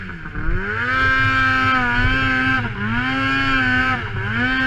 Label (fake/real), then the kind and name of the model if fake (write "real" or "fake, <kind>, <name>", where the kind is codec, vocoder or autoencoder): real